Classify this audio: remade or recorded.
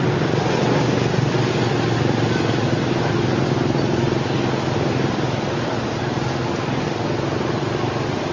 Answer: recorded